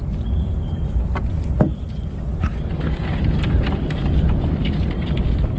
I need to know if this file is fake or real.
real